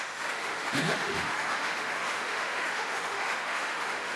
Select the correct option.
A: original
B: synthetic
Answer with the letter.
B